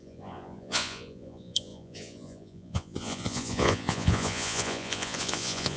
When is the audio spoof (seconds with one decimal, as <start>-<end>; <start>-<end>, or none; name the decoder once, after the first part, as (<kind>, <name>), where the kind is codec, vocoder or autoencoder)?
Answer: 0.0-5.8 (vocoder, Vocos)